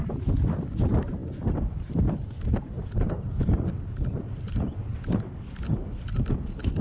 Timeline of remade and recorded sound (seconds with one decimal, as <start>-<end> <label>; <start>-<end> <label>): 0.0-6.8 recorded